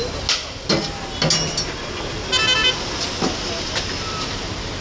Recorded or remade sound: recorded